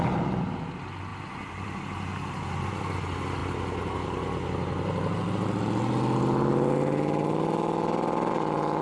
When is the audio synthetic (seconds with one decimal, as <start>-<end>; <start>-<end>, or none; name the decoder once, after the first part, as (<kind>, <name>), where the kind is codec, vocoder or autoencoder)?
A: 1.1-2.7 (vocoder, BigVGAN v2)